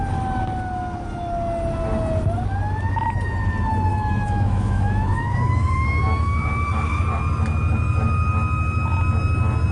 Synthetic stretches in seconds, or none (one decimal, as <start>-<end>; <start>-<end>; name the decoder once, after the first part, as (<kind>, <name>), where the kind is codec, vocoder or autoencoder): 3.9-7.0 (autoencoder, DAC-VAE)